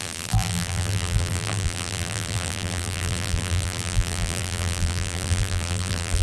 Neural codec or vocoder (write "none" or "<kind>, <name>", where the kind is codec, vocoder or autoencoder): vocoder, BigVGAN v2